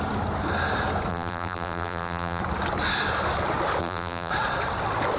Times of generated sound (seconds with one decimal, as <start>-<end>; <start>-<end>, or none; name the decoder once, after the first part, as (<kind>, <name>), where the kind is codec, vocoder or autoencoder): 1.1-2.4 (vocoder, BigVGAN v2); 3.8-4.3